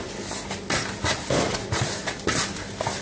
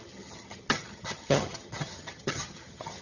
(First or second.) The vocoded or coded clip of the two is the second